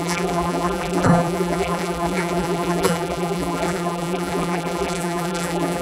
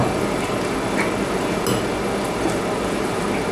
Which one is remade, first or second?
first